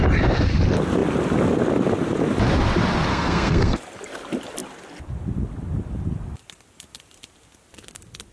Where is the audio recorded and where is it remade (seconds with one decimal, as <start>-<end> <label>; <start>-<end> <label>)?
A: 0.0-3.1 recorded; 3.1-3.8 remade; 3.8-8.3 recorded